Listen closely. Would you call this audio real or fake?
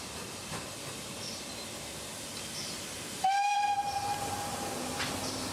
real